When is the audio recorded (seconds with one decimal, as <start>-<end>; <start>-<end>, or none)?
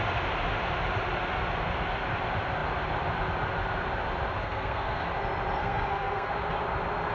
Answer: 0.0-4.4; 5.0-5.6; 6.3-7.1